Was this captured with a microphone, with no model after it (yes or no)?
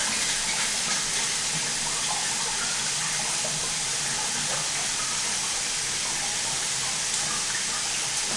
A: yes